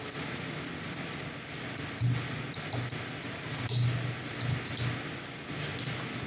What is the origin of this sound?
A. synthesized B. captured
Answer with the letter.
B